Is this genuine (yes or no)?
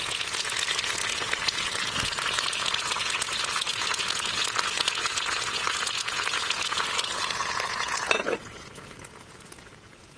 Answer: no